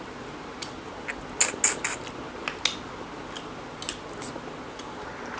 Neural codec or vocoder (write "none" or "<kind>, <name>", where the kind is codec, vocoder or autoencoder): none